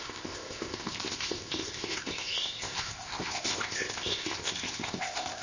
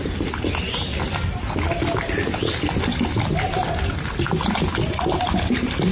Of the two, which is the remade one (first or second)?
first